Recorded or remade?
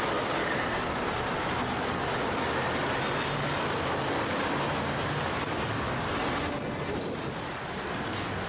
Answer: recorded